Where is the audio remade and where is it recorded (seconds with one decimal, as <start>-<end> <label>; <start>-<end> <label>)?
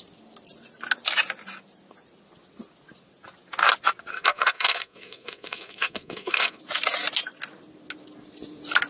0.0-4.1 recorded; 4.1-6.6 remade; 6.6-8.9 recorded